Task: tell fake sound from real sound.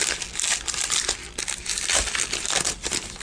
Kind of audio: real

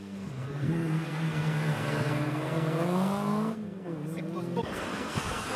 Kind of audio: fake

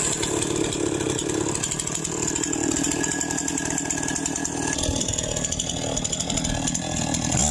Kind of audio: real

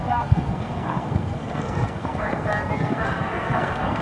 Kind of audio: fake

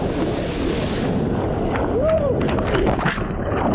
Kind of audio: real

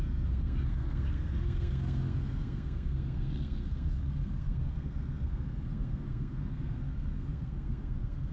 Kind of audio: fake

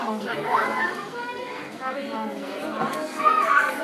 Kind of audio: fake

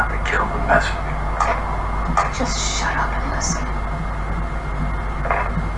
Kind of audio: real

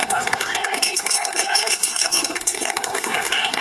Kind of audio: fake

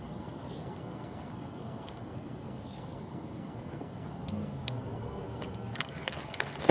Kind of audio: fake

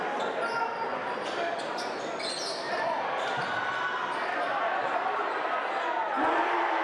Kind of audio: real